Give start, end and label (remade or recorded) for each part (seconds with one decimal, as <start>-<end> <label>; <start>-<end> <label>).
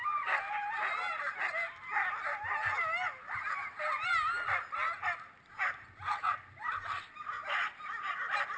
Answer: 0.0-8.6 recorded